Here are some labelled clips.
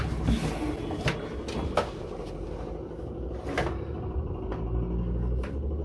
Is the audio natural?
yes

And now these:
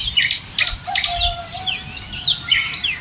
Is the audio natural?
yes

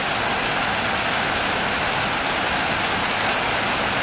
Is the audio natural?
yes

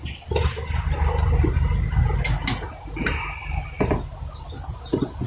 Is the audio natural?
yes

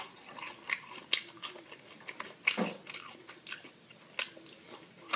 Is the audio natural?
yes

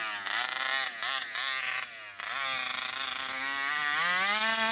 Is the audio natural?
yes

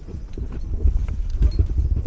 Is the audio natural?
no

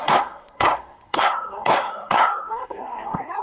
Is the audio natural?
no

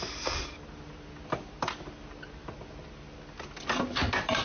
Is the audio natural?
yes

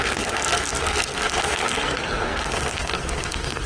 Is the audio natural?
no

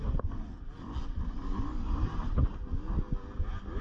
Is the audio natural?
yes